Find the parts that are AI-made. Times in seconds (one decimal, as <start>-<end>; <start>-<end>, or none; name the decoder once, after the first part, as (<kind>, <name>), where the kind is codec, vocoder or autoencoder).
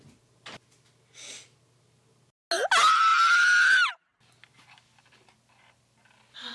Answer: none